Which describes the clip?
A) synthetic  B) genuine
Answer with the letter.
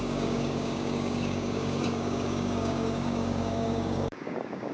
A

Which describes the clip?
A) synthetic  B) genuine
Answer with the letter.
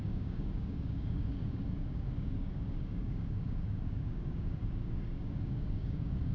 A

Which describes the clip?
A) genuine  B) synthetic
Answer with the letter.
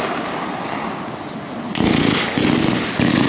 A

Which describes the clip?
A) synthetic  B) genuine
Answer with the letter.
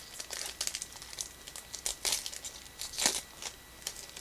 B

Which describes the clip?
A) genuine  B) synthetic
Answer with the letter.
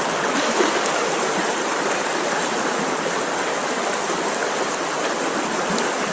A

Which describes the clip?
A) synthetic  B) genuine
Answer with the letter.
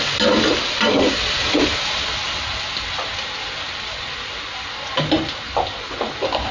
B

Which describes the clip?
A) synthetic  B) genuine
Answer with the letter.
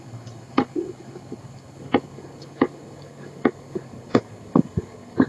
A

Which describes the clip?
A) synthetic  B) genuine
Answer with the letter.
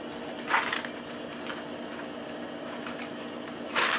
B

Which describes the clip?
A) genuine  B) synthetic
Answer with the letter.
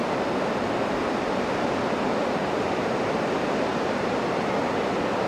A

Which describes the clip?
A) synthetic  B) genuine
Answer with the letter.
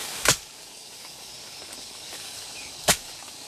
A